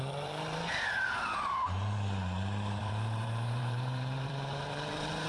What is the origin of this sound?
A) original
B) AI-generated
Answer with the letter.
B